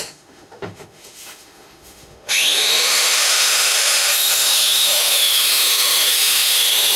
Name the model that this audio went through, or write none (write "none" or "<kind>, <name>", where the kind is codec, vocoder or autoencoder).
autoencoder, DAC-VAE